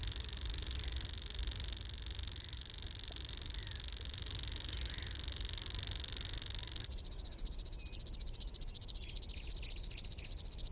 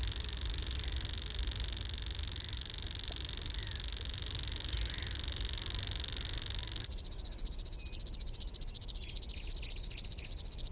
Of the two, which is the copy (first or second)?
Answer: first